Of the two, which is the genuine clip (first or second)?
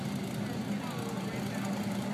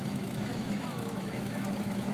first